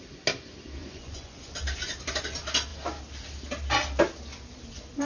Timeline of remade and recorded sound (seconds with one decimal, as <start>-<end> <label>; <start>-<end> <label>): 0.0-0.8 recorded; 0.8-1.5 remade; 1.5-5.1 recorded